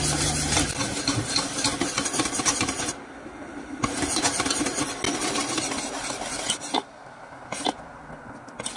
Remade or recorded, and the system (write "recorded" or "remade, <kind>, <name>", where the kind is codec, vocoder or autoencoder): recorded